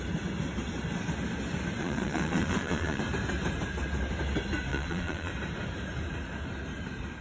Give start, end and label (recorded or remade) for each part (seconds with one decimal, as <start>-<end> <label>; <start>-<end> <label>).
0.0-1.8 recorded; 1.8-3.0 remade; 3.0-4.7 recorded; 4.7-5.3 remade; 5.3-7.2 recorded